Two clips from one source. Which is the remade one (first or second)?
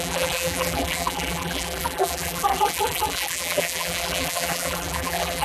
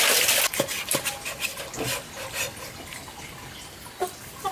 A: first